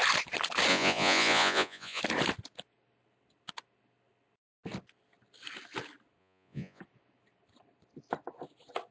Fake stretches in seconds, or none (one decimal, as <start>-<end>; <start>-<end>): 0.7-2.0; 6.2-6.8